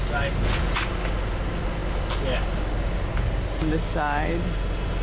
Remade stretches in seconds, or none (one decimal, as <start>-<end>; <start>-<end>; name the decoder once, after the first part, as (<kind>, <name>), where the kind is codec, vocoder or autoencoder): none